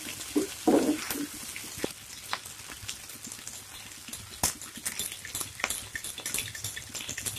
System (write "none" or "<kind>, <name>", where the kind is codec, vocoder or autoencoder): none